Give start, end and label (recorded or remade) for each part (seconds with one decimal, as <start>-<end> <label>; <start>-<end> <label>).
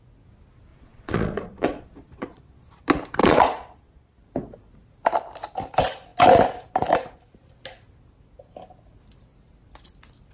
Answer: 0.0-0.7 recorded; 0.7-2.7 remade; 2.7-3.2 recorded; 3.2-4.2 remade; 4.2-10.3 recorded